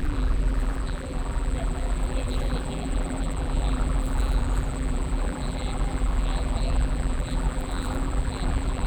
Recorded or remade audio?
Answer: remade